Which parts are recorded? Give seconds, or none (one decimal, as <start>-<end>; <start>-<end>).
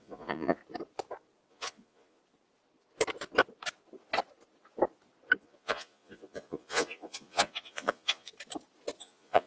0.6-1.5; 2.2-5.4; 8.3-9.0